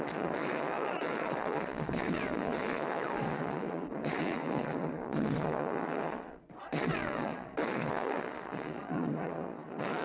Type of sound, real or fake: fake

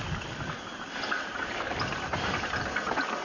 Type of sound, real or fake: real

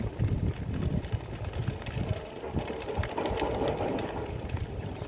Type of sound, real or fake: real